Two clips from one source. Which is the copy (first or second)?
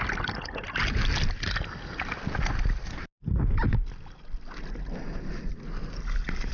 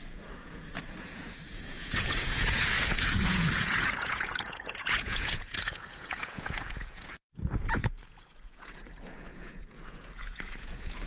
second